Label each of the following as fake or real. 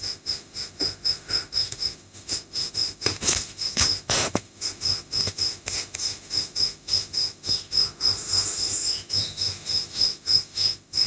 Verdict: fake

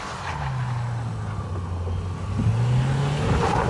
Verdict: real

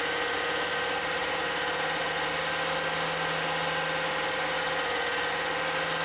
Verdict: real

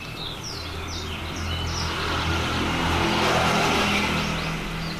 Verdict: real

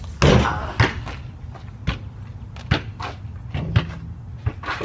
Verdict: real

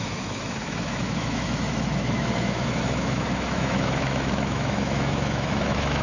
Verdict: fake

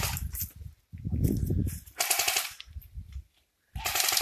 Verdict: real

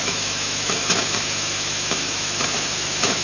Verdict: fake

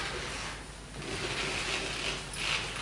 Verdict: real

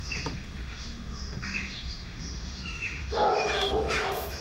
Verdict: fake